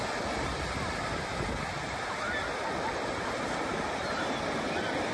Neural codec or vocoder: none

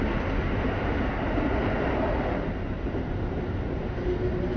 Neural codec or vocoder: none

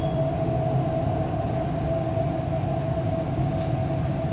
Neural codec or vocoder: none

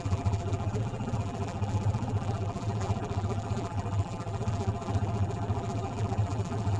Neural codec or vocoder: vocoder, BigVGAN v2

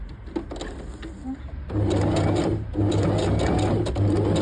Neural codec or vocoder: none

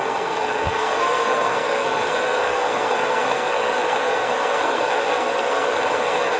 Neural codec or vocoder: codec, SNAC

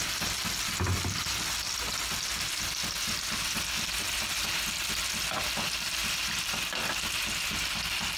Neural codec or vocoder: none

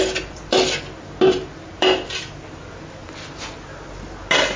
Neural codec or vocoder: none